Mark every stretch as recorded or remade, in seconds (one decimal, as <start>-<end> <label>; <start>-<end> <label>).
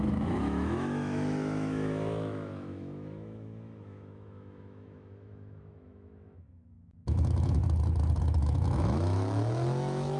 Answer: 0.0-7.6 remade; 7.6-8.2 recorded; 8.2-10.2 remade